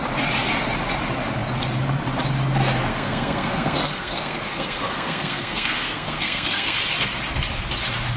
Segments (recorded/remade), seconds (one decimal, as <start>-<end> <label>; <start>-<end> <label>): 0.0-2.9 recorded; 2.9-6.8 remade; 6.8-8.2 recorded